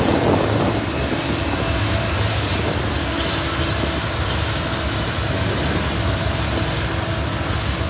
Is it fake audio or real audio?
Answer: real